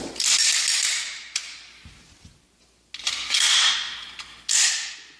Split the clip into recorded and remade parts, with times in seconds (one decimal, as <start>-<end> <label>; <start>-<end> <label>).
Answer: 0.0-5.2 recorded